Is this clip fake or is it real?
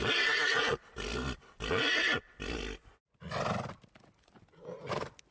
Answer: real